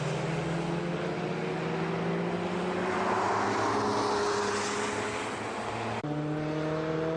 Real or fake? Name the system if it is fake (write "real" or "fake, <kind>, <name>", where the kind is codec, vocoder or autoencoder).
real